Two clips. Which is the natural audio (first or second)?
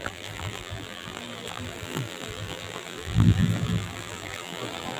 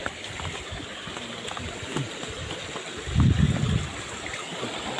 second